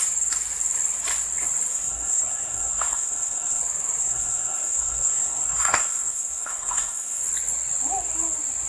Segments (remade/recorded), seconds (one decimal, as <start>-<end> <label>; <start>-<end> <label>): 0.0-1.7 recorded; 1.7-3.6 remade; 3.6-4.0 recorded; 4.0-7.2 remade; 7.2-8.7 recorded